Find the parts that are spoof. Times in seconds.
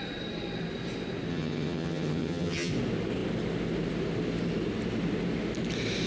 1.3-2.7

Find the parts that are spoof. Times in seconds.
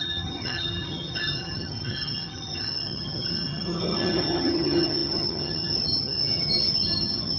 0.0-7.4